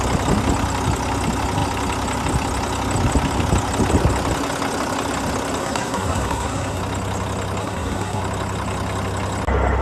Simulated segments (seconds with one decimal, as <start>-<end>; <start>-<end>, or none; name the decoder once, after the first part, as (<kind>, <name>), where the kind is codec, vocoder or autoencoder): 5.6-6.8 (codec, SNAC); 7.6-8.2